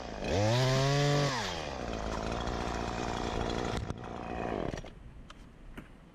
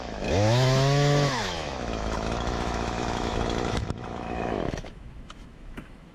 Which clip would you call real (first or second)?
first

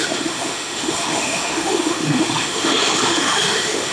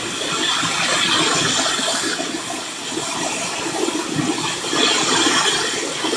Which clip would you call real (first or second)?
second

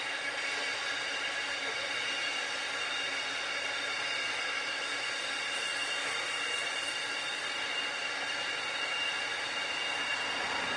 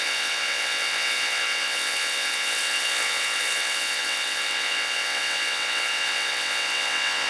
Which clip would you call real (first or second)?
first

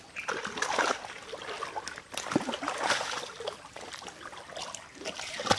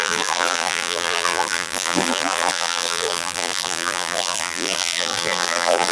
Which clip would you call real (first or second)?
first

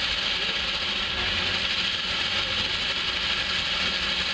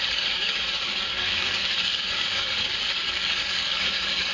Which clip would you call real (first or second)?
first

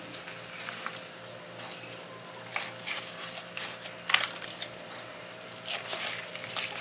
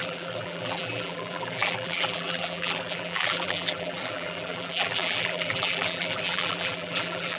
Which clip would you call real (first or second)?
first